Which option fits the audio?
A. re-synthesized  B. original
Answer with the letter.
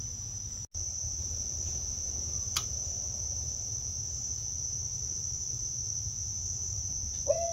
B